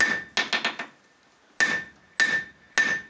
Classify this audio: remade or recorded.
recorded